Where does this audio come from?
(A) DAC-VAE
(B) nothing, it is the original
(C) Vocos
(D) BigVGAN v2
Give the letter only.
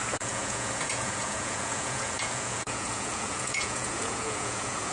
C